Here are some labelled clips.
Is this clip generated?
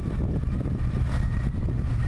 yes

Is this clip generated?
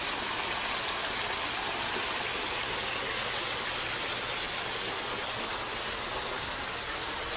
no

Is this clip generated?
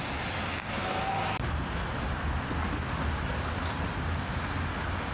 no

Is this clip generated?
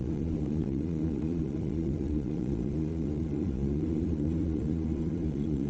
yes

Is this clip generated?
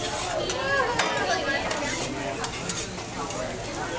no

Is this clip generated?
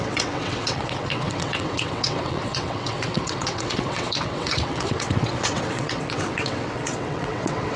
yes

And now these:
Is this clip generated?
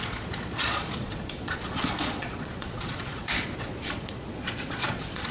yes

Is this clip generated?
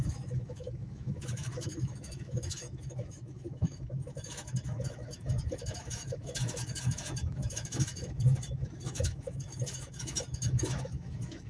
yes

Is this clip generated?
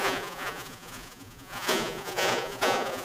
yes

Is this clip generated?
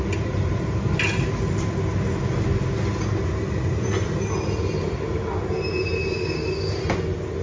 no